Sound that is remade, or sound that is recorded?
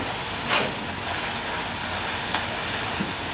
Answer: recorded